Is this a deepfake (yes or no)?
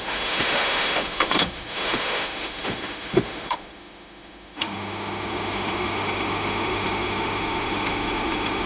yes